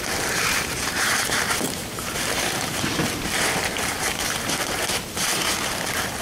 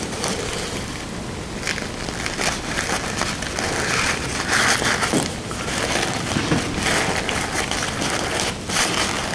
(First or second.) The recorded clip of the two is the second